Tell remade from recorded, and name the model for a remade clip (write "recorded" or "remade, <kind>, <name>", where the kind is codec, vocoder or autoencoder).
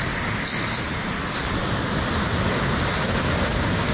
recorded